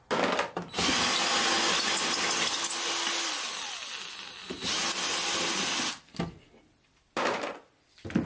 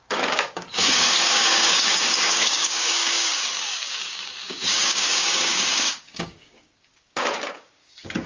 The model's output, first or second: second